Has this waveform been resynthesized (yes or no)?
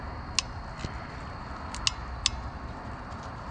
no